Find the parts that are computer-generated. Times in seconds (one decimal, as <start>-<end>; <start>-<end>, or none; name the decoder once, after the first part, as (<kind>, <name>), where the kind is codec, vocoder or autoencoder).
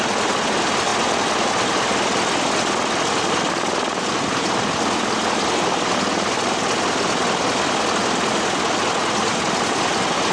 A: none